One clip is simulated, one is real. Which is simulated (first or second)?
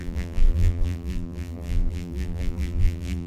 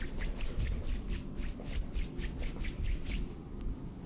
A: first